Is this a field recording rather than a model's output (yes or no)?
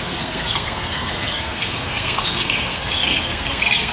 no